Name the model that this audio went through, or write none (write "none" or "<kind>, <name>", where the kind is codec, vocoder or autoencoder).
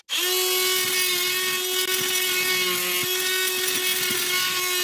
none